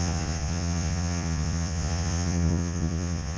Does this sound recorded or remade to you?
remade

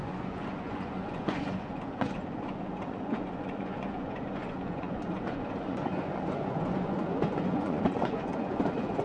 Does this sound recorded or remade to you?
remade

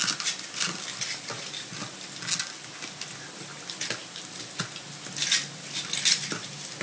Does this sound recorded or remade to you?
recorded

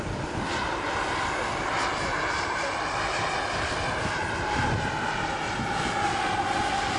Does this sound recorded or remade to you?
recorded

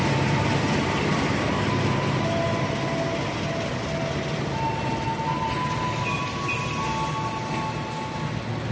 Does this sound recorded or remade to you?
recorded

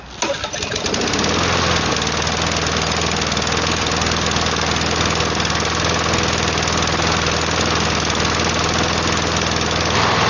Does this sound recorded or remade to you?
recorded